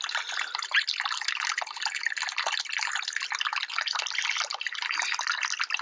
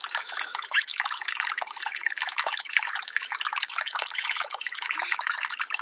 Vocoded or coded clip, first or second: second